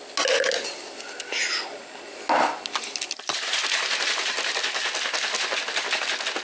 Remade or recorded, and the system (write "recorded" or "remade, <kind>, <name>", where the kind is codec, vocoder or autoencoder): recorded